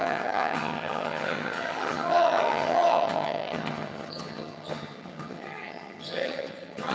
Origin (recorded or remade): remade